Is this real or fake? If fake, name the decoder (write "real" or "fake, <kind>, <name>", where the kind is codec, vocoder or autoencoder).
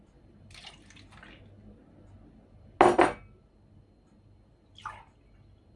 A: real